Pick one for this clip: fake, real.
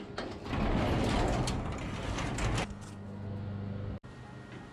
real